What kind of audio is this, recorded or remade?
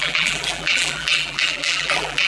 remade